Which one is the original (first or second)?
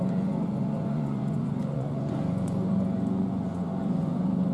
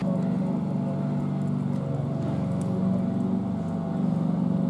second